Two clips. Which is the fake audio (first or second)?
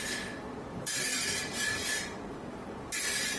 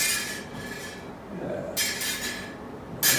first